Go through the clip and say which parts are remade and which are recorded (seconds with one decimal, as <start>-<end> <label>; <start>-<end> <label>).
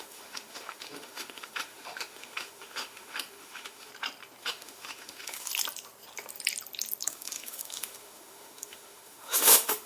0.0-3.9 remade; 3.9-4.4 recorded; 4.4-5.5 remade; 5.5-7.1 recorded; 7.1-9.9 remade